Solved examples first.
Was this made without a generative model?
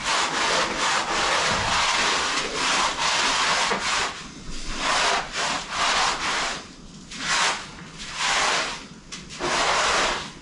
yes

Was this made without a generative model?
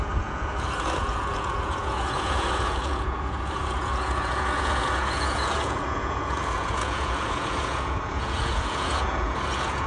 no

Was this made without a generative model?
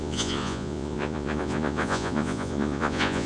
no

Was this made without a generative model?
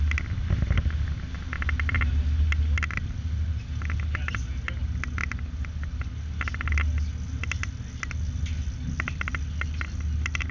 yes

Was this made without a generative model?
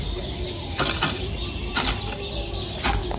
yes